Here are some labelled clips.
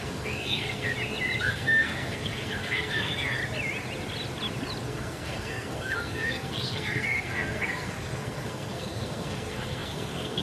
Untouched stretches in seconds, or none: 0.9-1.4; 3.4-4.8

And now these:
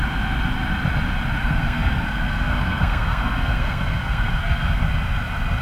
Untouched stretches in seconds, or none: 0.0-1.4; 4.8-5.6

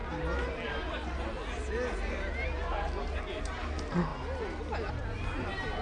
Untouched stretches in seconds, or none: 0.0-5.8

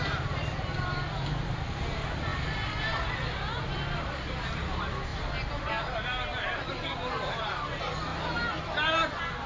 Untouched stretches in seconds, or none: 0.0-9.5

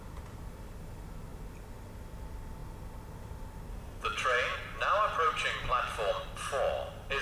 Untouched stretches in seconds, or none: 0.0-7.2

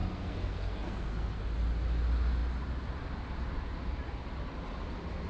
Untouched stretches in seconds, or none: 1.4-5.3

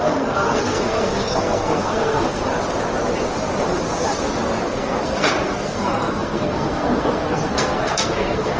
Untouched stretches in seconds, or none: 2.5-4.6

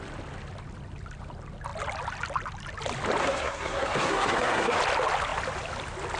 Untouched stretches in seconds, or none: 0.0-3.2; 4.8-6.2